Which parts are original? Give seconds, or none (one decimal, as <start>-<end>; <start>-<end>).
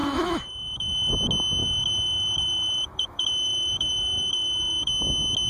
1.1-1.6; 4.9-5.5